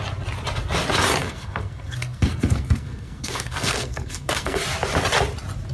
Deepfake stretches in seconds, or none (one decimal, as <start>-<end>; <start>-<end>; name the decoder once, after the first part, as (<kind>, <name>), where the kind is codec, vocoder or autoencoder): 1.2-4.6 (codec, SNAC)